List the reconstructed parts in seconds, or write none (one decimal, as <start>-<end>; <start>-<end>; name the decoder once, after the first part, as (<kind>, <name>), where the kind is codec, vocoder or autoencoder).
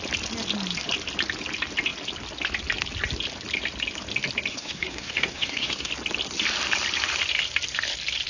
4.5-5.9 (codec, SNAC)